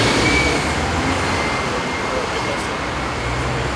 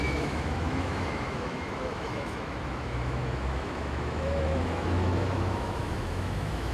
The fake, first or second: second